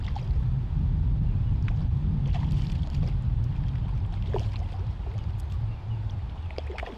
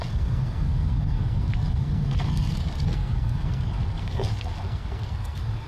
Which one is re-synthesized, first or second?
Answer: second